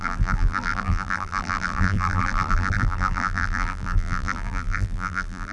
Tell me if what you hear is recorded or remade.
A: remade